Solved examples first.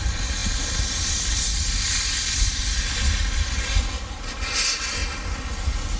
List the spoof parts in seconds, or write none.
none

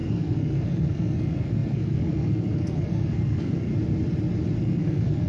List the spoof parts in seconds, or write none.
0.0-3.7 (codec, SNAC); 4.6-5.3

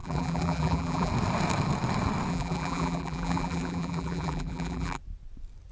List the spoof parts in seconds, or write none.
0.0-1.1 (vocoder, BigVGAN v2); 2.3-5.0

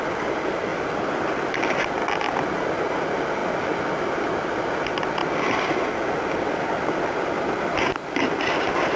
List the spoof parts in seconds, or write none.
0.7-1.4 (vocoder, BigVGAN v2)

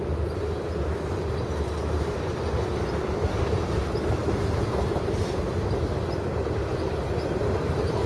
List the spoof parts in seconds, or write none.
none